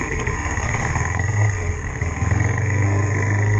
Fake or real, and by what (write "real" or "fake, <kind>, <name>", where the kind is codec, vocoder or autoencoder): fake, codec, SNAC